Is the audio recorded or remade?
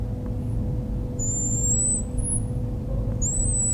recorded